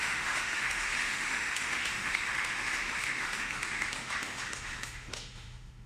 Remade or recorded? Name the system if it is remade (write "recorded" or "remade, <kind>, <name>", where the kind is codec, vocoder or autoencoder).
remade, autoencoder, DAC-VAE